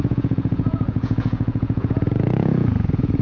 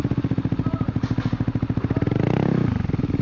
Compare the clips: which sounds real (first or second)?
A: second